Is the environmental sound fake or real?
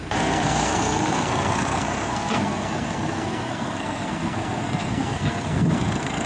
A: fake